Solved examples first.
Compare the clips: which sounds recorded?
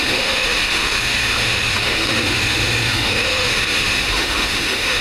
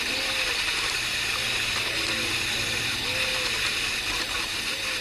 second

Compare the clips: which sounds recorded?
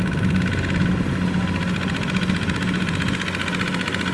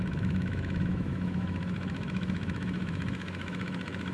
first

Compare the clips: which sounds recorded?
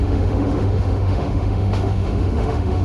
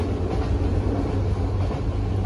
second